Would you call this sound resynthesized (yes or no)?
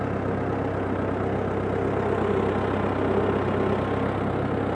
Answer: no